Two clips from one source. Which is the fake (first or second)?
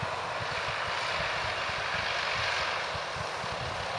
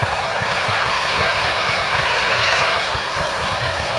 second